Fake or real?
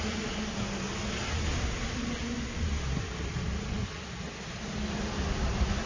real